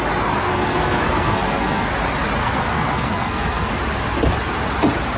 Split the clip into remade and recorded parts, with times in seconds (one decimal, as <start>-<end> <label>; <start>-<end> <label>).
0.0-0.4 recorded; 0.4-1.9 remade; 1.9-2.4 recorded; 2.4-3.7 remade; 3.7-5.2 recorded